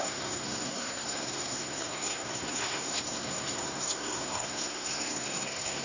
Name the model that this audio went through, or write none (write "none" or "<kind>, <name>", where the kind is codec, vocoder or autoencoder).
codec, SNAC